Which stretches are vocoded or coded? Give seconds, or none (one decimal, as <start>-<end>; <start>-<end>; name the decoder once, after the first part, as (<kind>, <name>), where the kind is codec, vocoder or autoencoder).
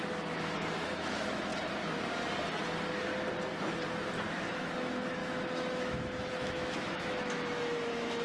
0.0-1.5 (autoencoder, DAC-VAE); 4.3-8.2